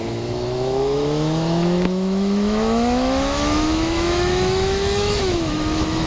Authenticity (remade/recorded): remade